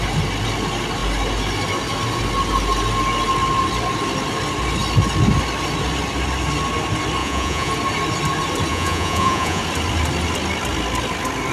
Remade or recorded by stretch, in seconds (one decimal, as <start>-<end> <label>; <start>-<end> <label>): 0.0-7.2 recorded; 7.2-7.7 remade; 7.7-8.7 recorded; 8.7-9.6 remade; 9.6-11.5 recorded